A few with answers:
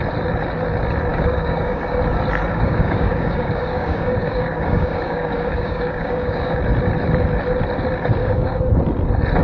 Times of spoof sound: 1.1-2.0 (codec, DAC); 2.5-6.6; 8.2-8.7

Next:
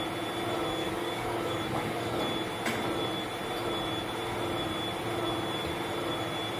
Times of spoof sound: 0.8-2.2 (codec, DAC)

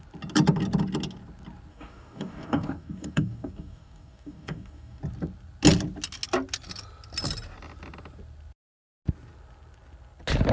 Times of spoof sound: 1.7-5.0 (codec, DAC)

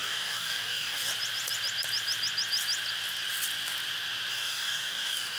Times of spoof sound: 0.0-1.1 (codec, DAC); 4.3-5.4

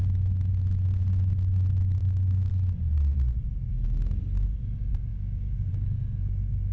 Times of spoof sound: 2.0-2.5 (codec, DAC); 5.1-5.7